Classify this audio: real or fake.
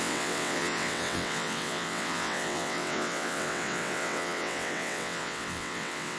fake